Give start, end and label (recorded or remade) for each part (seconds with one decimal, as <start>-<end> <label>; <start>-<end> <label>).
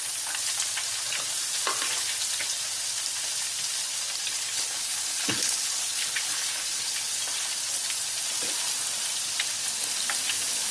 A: 0.0-4.3 recorded; 4.3-7.2 remade; 7.2-10.7 recorded